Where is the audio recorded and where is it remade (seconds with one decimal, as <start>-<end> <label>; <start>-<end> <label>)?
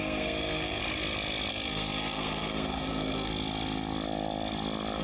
0.0-0.8 remade; 0.8-1.5 recorded; 1.5-3.3 remade; 3.3-5.0 recorded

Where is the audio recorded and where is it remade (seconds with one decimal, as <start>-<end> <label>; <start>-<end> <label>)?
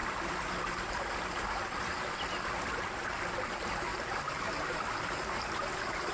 0.0-3.9 recorded; 3.9-5.1 remade; 5.1-6.1 recorded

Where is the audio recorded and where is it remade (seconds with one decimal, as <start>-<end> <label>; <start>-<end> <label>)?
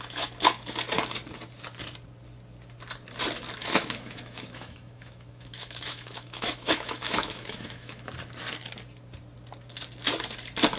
0.0-3.6 recorded; 3.6-8.1 remade; 8.1-10.8 recorded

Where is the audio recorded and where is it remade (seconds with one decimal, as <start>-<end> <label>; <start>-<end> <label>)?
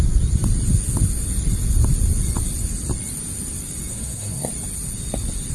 0.0-3.9 recorded; 3.9-4.5 remade; 4.5-5.5 recorded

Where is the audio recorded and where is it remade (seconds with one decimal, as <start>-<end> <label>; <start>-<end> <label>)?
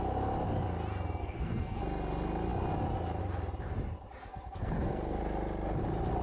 0.0-1.2 recorded; 1.2-1.8 remade; 1.8-4.3 recorded; 4.3-5.2 remade; 5.2-6.2 recorded